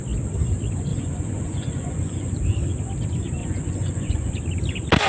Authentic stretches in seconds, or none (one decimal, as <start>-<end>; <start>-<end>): 0.0-0.9; 2.3-3.4; 4.3-5.1